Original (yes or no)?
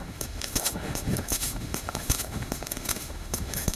no